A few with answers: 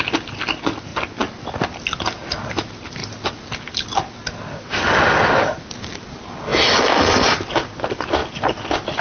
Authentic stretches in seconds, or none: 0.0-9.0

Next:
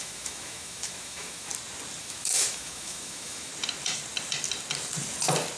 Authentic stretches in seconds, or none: 1.5-2.0; 3.5-5.6

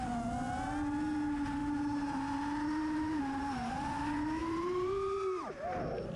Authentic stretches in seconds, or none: 0.0-1.6; 3.2-4.4; 5.5-6.2

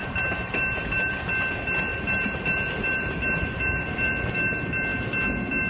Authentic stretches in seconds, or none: 1.1-1.9; 4.1-5.7

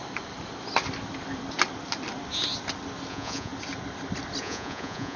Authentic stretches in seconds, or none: 0.0-3.1; 3.5-4.4

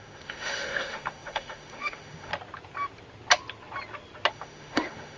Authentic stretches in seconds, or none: 2.3-4.3

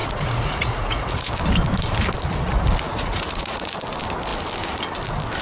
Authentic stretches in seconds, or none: 1.3-2.9; 3.7-5.4